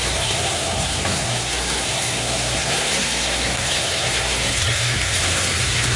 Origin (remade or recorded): remade